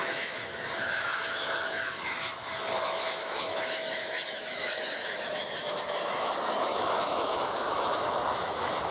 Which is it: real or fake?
fake